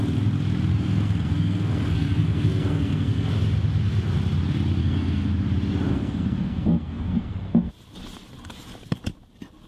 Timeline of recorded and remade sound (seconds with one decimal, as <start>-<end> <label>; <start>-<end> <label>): 0.0-0.7 recorded; 0.7-3.3 remade; 3.3-4.8 recorded; 4.8-5.3 remade; 5.3-5.9 recorded; 5.9-7.7 remade; 7.7-9.7 recorded